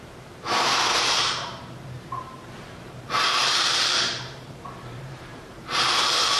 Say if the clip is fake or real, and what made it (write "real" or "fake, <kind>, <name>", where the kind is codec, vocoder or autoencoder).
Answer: fake, vocoder, BigVGAN v2